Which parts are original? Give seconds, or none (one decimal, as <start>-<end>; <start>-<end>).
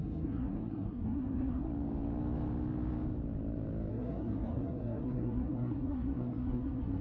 1.7-3.9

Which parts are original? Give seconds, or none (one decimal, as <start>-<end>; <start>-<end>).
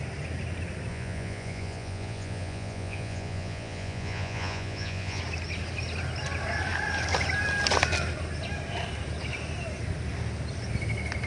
0.0-0.9; 5.2-11.3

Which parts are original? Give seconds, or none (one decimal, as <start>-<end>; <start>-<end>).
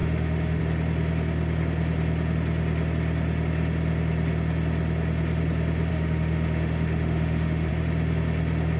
0.6-5.9; 7.7-8.8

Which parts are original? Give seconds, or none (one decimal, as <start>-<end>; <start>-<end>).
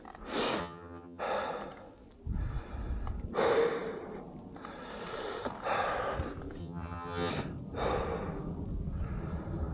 0.0-0.6; 1.2-6.6; 7.3-9.7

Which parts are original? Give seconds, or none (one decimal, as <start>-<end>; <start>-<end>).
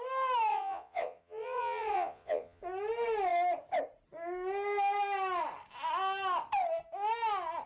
0.0-0.5; 2.6-7.7